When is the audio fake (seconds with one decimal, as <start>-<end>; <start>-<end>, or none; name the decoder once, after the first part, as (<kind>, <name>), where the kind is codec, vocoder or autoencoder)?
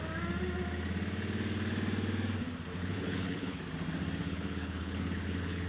2.8-3.6 (codec, HILCodec); 4.2-5.7